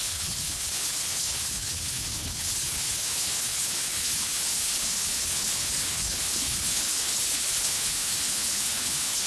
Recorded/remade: remade